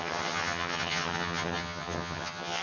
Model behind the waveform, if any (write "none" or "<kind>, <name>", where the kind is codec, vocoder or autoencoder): vocoder, HiFi-GAN